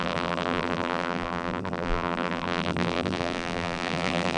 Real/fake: fake